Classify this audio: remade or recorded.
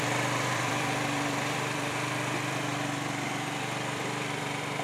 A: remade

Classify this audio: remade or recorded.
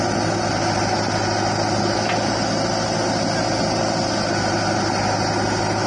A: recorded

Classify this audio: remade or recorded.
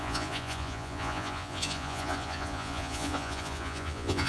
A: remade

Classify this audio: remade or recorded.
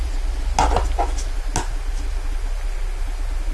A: recorded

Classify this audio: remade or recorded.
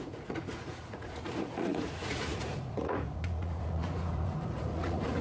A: remade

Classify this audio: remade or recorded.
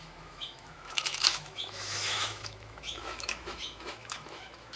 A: remade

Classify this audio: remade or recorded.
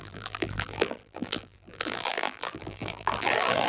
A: remade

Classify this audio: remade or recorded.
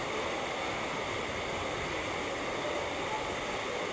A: recorded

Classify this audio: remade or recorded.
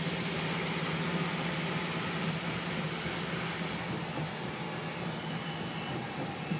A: recorded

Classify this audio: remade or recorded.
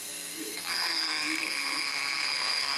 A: remade